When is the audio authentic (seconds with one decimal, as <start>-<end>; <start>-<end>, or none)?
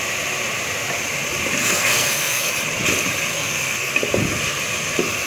0.0-1.6; 2.5-3.3; 3.9-5.3